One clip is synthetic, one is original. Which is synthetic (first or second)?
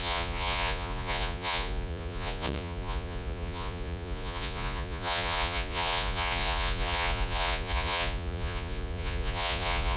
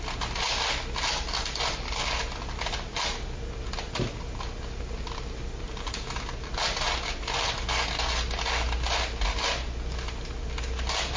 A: first